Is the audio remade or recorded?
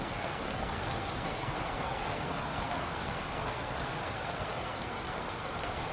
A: remade